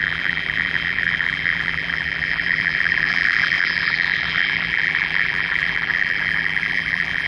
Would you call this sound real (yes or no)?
no